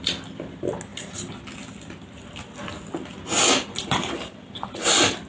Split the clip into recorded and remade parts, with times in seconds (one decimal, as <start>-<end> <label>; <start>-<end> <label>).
0.0-5.3 recorded

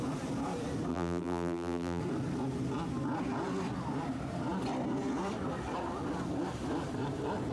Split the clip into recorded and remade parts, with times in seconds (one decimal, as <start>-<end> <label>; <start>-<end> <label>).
0.0-0.9 recorded; 0.9-2.0 remade; 2.0-7.5 recorded

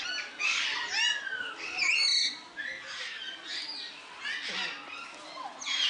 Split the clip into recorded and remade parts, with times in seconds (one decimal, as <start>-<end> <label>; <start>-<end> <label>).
0.0-5.9 recorded